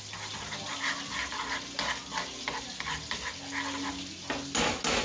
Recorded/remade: recorded